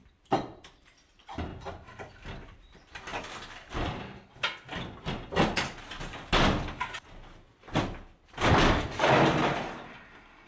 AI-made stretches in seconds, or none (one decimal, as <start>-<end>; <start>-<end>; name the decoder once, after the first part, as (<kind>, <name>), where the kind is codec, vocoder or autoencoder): 0.0-1.5 (vocoder, BigVGAN v2); 2.1-3.1; 7.6-10.5